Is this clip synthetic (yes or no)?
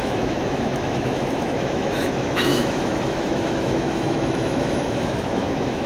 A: yes